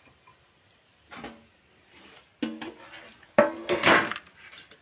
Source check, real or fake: real